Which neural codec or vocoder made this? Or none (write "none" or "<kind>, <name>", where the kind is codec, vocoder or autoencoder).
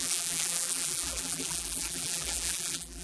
vocoder, BigVGAN v2